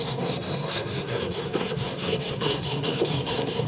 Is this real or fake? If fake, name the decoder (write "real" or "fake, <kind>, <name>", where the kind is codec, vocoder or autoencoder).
fake, codec, SNAC